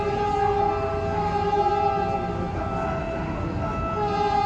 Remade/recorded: recorded